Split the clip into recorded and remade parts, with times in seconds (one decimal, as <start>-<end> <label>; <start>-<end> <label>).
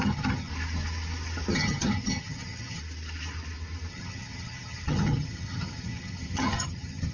0.0-0.5 remade; 0.5-1.5 recorded; 1.5-2.8 remade; 2.8-3.9 recorded; 3.9-7.1 remade